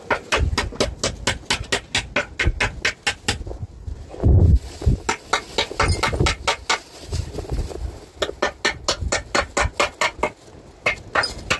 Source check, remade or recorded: recorded